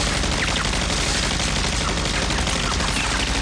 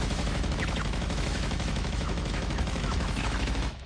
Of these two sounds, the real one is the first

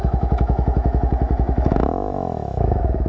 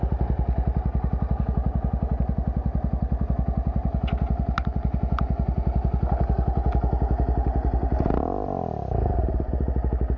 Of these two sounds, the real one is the second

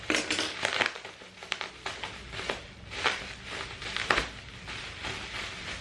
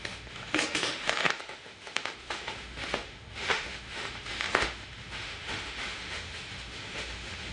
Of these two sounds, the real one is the first